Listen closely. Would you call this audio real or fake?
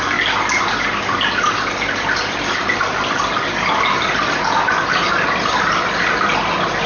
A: real